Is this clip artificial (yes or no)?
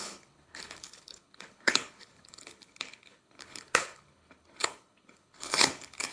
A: yes